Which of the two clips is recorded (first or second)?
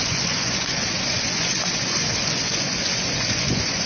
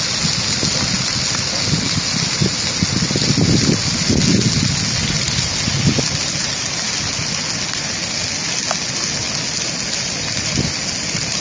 second